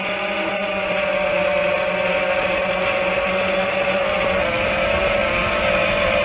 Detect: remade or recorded recorded